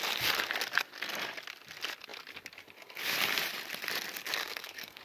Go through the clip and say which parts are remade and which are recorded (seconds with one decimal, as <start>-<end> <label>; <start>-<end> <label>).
0.0-4.4 recorded; 4.4-5.0 remade